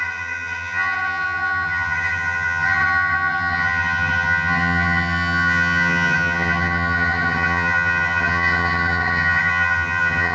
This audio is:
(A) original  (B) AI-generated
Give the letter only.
B